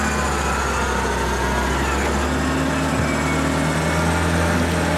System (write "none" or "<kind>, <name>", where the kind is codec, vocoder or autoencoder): none